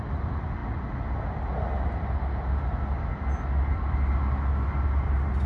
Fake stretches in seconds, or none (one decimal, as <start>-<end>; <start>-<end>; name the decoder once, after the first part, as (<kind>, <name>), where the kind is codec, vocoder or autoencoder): none